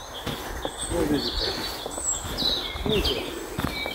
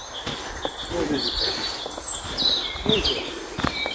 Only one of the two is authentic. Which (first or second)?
first